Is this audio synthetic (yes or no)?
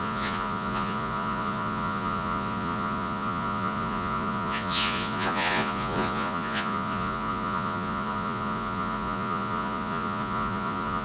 yes